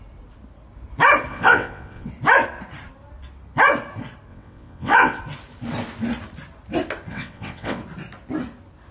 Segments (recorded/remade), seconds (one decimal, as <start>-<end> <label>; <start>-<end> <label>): 0.0-1.3 recorded; 1.3-2.1 remade; 2.1-4.3 recorded; 4.3-5.2 remade; 5.2-7.1 recorded; 7.1-7.8 remade; 7.8-8.9 recorded